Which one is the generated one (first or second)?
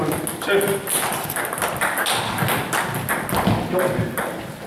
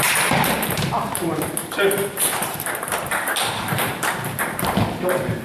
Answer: second